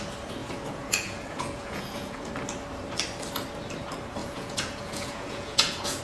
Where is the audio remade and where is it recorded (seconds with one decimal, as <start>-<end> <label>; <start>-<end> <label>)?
0.0-0.4 recorded; 0.4-2.3 remade; 2.3-4.2 recorded; 4.2-6.0 remade